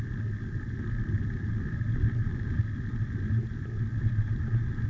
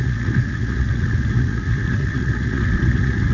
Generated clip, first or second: second